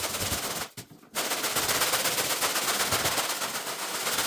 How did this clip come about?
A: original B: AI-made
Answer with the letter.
A